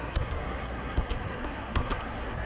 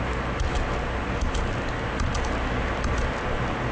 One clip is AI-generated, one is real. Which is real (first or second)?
second